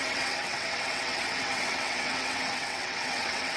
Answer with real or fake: fake